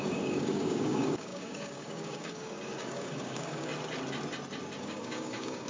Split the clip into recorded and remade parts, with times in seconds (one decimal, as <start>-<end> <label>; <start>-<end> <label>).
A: 0.0-3.7 remade; 3.7-4.8 recorded; 4.8-5.7 remade